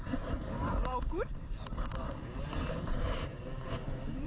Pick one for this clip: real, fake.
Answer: fake